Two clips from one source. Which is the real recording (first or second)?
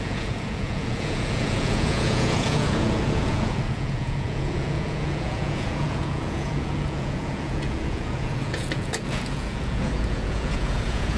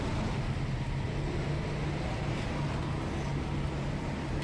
second